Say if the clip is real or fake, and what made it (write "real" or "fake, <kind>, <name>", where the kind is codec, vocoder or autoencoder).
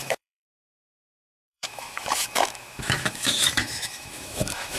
fake, autoencoder, DAC-VAE